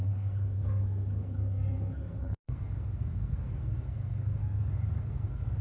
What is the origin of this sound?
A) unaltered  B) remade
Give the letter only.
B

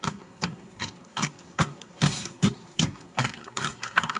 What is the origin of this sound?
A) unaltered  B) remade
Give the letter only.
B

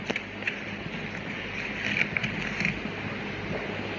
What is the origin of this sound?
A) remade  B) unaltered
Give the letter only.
B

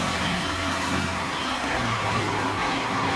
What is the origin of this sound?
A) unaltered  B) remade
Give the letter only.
B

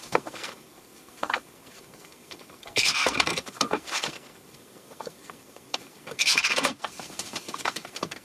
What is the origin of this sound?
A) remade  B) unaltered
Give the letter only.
A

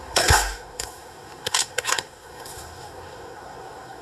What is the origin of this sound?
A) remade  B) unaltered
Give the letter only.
A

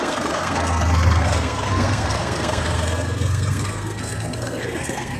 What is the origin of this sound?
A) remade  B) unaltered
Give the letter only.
A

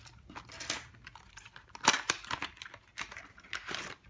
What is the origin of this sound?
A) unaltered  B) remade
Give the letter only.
A